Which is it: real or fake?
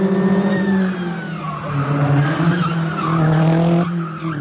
real